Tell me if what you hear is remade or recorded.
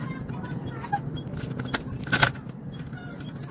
recorded